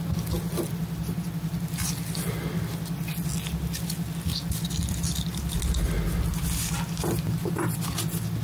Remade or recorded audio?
recorded